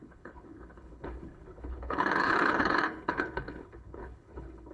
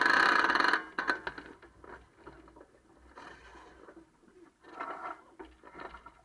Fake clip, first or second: first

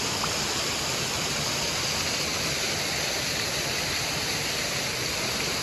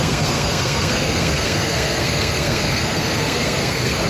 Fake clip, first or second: second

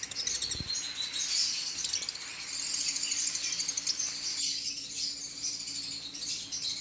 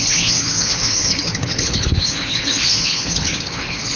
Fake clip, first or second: second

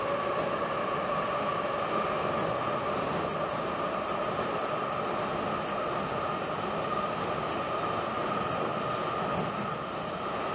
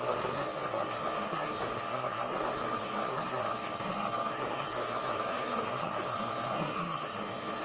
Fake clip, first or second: second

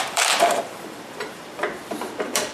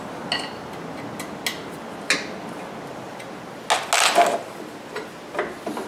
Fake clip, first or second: first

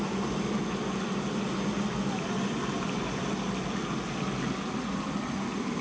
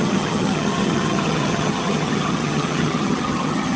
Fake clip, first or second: second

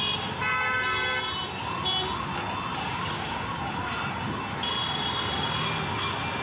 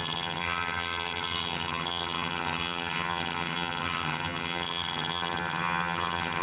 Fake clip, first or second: second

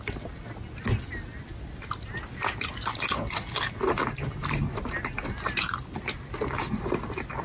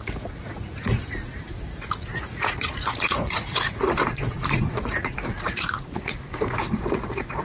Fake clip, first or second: second